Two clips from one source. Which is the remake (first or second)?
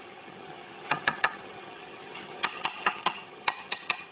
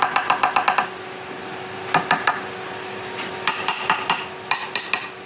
first